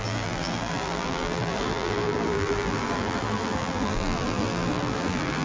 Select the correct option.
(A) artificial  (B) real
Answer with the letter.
A